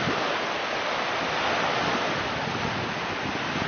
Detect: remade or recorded recorded